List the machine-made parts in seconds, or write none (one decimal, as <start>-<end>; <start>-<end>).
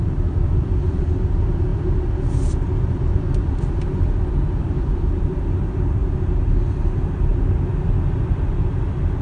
0.0-6.0; 6.7-7.3; 8.3-9.2